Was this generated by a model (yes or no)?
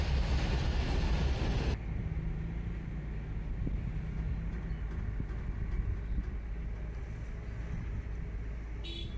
no